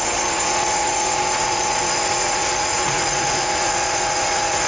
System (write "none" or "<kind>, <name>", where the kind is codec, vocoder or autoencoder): vocoder, Vocos